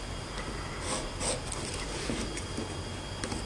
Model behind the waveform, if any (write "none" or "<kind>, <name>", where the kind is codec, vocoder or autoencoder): none